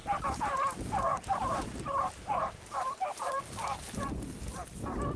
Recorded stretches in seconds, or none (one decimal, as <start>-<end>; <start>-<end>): 0.0-1.1; 4.0-5.2